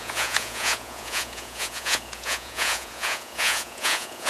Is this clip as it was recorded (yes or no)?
no